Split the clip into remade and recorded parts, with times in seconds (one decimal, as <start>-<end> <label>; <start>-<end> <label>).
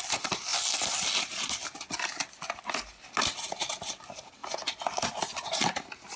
0.0-6.2 recorded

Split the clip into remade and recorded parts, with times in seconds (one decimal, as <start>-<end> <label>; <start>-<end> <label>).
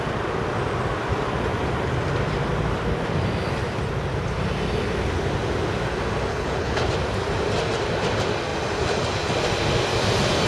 0.0-6.3 recorded; 6.3-6.9 remade; 6.9-10.5 recorded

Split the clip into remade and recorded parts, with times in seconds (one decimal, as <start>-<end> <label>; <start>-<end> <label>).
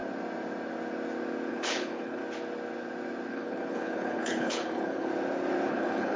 0.0-1.5 recorded; 1.5-2.2 remade; 2.2-3.3 recorded; 3.3-5.1 remade; 5.1-5.7 recorded; 5.7-6.2 remade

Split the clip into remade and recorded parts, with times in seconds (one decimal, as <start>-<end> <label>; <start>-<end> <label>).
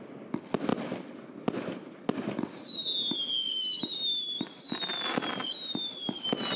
0.0-6.6 recorded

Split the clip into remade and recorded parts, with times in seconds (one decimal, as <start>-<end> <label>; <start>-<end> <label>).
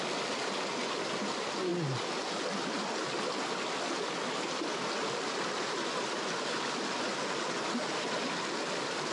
0.0-9.1 recorded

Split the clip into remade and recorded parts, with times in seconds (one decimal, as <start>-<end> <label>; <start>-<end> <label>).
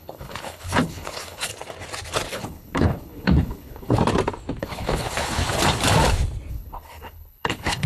0.0-1.5 remade; 1.5-2.3 recorded; 2.3-4.0 remade; 4.0-4.6 recorded; 4.6-5.4 remade; 5.4-6.5 recorded; 6.5-7.9 remade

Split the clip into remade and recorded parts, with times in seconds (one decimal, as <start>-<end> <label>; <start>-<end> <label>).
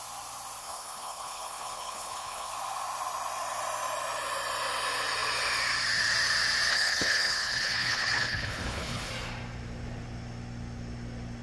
0.0-0.6 recorded; 0.6-2.5 remade; 2.5-6.7 recorded; 6.7-9.1 remade; 9.1-11.4 recorded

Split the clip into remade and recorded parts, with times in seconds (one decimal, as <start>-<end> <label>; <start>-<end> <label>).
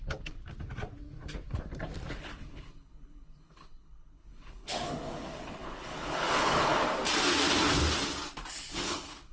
0.0-0.4 remade; 0.4-2.1 recorded; 2.1-6.8 remade; 6.8-8.5 recorded; 8.5-9.3 remade